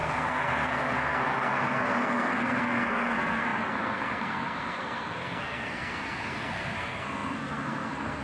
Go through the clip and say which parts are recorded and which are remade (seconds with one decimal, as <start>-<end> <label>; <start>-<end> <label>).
0.0-8.2 remade